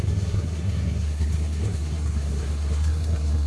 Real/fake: fake